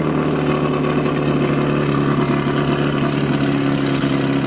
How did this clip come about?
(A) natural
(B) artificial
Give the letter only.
A